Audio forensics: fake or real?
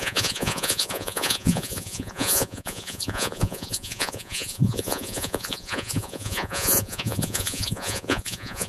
fake